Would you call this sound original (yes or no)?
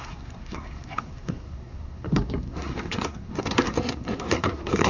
no